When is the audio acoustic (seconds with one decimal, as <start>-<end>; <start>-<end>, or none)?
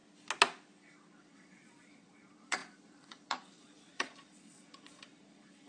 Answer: 0.0-1.1